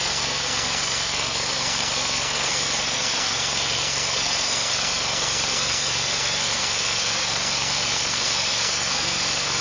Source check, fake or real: fake